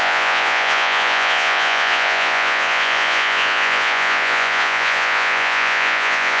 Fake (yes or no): yes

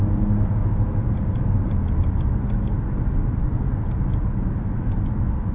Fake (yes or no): no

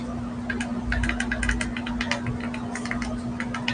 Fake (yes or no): no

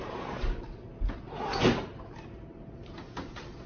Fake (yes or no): no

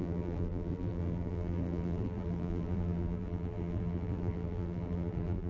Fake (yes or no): yes